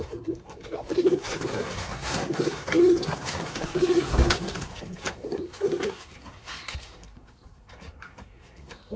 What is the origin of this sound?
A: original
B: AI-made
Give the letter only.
B